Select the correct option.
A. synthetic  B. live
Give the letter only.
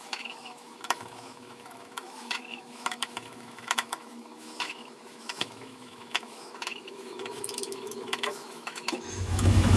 A